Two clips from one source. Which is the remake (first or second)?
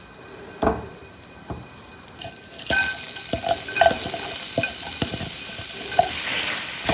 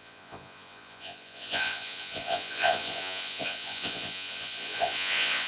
second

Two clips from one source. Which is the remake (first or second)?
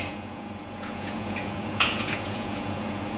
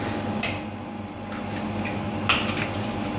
first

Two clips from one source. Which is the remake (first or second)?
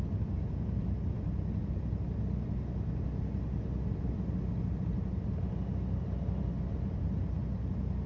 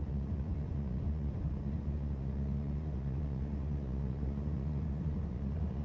second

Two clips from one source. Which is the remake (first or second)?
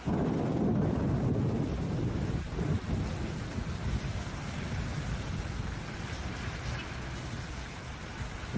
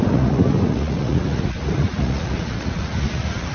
second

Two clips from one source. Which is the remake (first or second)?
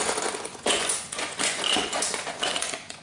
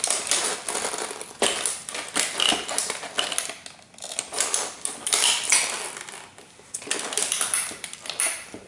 first